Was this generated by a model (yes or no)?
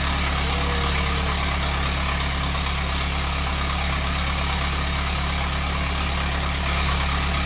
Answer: no